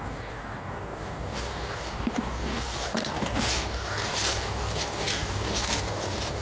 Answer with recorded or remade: remade